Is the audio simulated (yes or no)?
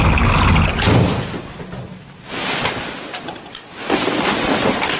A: no